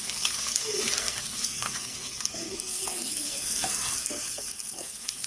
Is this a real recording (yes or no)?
no